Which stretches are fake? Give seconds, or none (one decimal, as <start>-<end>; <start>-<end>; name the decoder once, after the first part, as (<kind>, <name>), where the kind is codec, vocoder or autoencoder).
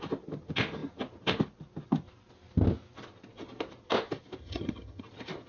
4.4-5.0 (vocoder, HiFi-GAN)